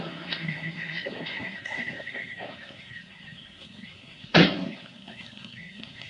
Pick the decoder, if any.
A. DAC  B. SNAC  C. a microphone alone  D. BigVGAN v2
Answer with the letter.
B